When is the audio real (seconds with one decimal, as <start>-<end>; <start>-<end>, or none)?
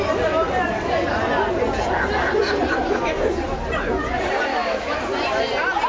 0.0-4.5; 5.0-5.9